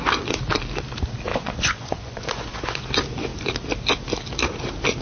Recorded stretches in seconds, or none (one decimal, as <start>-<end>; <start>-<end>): 0.0-1.3; 2.9-5.0